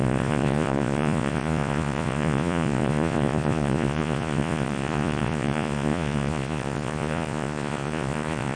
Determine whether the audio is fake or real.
fake